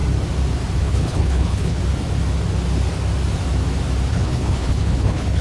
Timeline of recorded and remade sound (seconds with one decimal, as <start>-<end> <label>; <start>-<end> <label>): 0.0-0.8 recorded; 0.8-1.8 remade; 1.8-4.1 recorded; 4.1-5.4 remade